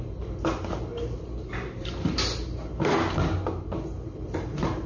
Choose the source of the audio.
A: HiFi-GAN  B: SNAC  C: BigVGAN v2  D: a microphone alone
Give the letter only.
D